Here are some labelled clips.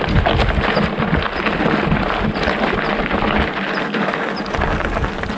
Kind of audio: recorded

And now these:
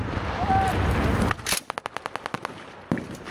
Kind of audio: recorded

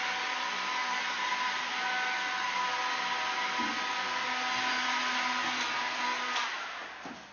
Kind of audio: recorded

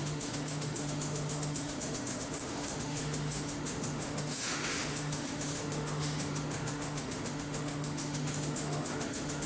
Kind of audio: remade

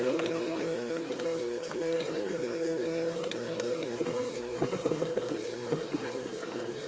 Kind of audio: remade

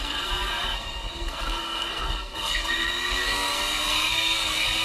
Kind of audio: remade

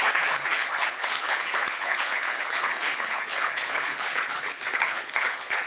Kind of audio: remade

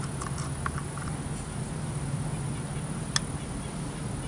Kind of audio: recorded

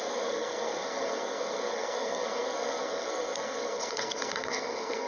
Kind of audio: remade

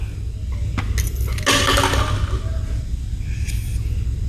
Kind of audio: recorded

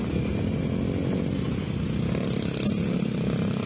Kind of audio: recorded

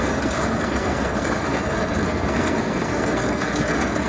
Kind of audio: remade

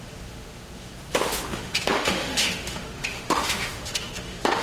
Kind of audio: remade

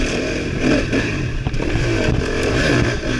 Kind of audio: remade